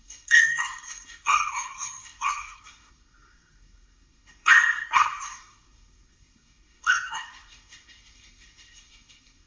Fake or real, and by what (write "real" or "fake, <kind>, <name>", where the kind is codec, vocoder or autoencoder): fake, codec, SNAC